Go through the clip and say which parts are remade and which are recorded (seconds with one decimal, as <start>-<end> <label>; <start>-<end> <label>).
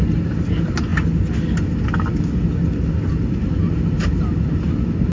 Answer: 0.0-0.9 remade; 0.9-3.1 recorded; 3.1-5.1 remade